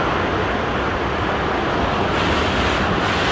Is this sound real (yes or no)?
yes